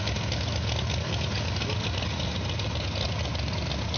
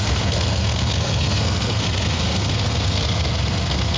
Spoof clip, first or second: second